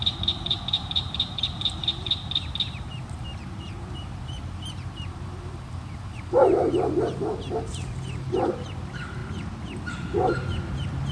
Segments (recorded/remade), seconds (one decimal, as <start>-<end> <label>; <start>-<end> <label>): 0.0-9.2 remade; 9.2-11.1 recorded